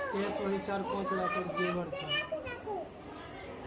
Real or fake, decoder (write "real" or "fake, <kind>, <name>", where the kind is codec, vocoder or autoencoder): real